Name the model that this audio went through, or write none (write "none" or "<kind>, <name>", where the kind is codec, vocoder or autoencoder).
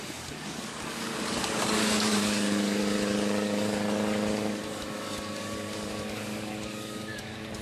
codec, DAC